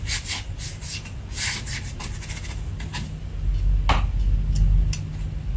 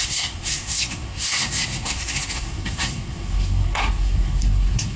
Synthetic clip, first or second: second